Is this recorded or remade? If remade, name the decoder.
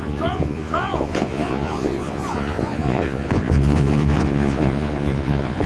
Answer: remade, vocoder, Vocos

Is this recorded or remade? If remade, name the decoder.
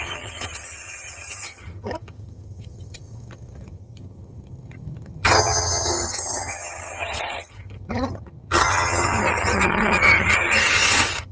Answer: remade, vocoder, HiFi-GAN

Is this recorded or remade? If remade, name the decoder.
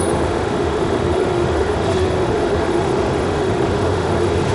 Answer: remade, autoencoder, DAC-VAE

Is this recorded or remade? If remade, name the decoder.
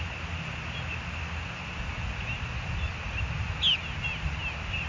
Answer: recorded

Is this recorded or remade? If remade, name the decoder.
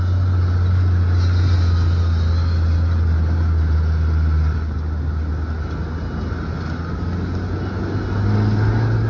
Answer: recorded